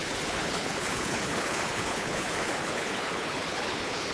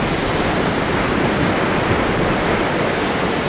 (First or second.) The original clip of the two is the second